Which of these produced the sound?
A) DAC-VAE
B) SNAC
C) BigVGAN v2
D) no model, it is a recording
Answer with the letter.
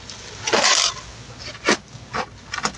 D